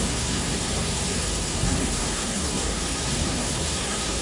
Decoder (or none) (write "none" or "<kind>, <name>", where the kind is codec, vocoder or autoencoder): codec, SNAC